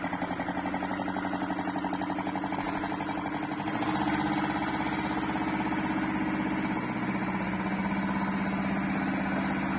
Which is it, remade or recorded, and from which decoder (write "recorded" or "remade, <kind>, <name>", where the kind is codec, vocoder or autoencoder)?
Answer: recorded